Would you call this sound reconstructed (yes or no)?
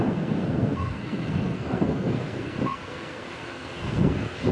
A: yes